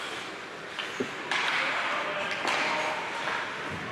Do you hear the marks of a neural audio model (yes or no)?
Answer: no